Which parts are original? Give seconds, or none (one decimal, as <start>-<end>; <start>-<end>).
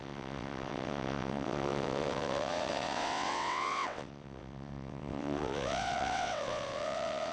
none